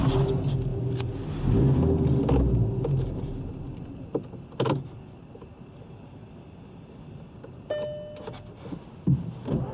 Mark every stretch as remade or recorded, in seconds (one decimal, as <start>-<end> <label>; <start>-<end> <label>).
0.0-9.7 recorded